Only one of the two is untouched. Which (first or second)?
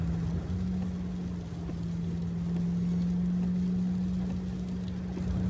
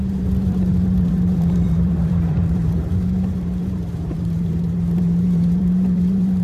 first